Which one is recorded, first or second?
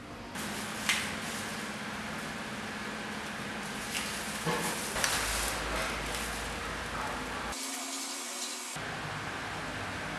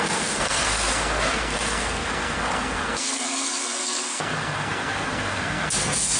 first